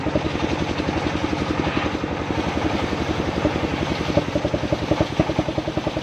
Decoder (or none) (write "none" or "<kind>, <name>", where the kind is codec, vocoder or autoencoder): none